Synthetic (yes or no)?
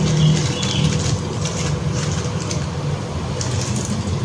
no